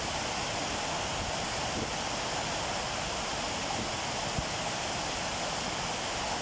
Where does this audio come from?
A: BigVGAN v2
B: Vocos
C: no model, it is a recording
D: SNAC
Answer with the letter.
C